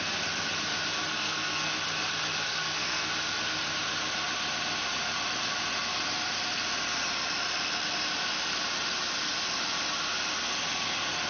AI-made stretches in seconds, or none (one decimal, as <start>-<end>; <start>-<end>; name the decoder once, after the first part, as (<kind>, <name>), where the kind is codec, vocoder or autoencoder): 1.1-1.7 (codec, SNAC); 2.5-3.1